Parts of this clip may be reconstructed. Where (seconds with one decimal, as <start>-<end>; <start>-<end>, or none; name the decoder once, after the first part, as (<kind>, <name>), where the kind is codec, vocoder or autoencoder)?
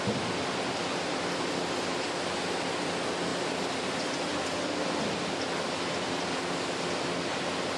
none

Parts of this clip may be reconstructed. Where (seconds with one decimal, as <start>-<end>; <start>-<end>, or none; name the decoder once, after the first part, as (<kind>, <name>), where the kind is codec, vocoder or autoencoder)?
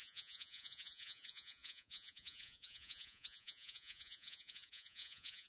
0.0-5.5 (vocoder, Vocos)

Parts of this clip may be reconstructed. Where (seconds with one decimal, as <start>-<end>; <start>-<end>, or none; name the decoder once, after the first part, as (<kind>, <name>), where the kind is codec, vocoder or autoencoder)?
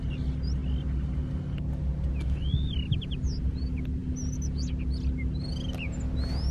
none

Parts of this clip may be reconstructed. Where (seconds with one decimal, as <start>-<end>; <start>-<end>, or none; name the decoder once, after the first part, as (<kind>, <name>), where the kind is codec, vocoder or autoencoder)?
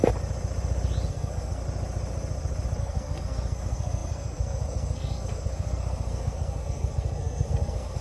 1.1-1.6 (codec, SNAC); 2.8-8.0